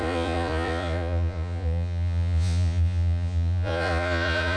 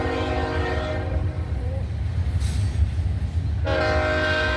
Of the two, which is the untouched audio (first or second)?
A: second